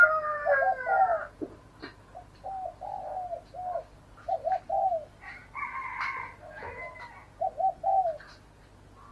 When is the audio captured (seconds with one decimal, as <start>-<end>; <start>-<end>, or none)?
0.0-9.1